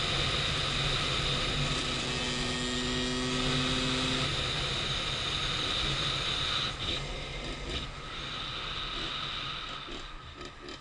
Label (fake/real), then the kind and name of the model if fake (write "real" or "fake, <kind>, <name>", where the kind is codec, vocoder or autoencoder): real